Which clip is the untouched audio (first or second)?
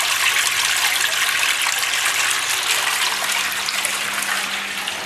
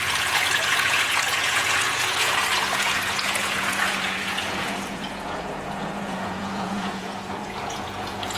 first